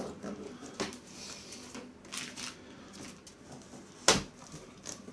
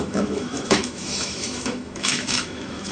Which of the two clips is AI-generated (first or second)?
second